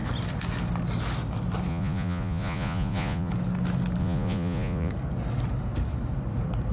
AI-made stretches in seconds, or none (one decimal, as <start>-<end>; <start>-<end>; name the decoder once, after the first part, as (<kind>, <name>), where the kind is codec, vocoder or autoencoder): 1.7-3.3 (vocoder, Vocos); 4.0-4.9

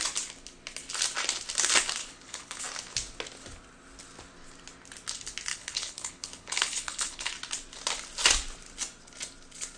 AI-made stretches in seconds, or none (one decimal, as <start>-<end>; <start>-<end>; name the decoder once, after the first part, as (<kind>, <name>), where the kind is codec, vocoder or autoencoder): 2.0-2.6 (codec, HILCodec); 5.5-7.3

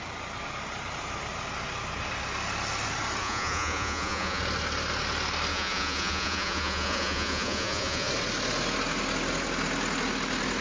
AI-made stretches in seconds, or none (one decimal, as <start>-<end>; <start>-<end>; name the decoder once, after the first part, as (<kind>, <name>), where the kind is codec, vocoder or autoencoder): 3.2-4.4 (vocoder, Vocos); 5.5-8.1

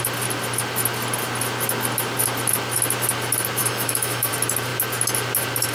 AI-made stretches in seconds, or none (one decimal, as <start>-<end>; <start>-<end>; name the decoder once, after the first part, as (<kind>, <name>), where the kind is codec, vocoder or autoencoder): 3.6-4.3 (autoencoder, DAC-VAE)